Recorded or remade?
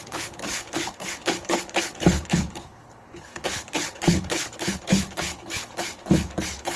remade